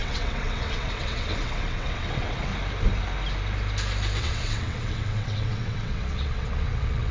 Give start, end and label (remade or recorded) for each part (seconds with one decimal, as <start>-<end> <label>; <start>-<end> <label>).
0.0-2.5 remade; 2.5-4.2 recorded; 4.2-7.1 remade